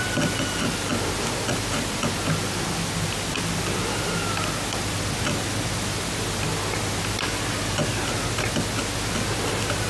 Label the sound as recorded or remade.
recorded